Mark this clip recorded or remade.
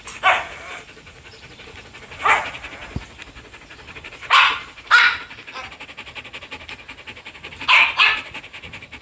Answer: recorded